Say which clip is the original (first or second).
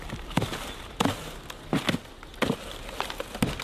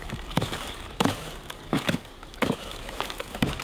first